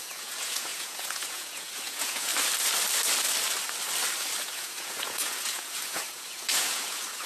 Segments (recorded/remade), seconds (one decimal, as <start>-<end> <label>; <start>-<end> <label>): 0.0-2.3 remade; 2.3-4.4 recorded; 4.4-7.3 remade